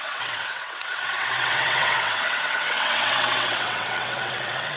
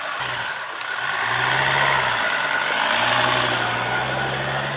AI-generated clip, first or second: first